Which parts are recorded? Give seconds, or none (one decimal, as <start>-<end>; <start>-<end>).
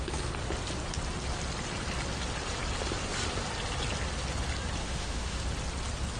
0.0-4.8; 5.4-6.2